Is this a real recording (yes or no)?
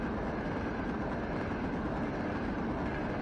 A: yes